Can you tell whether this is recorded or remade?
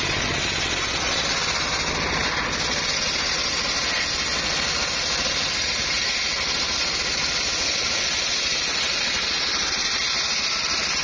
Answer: recorded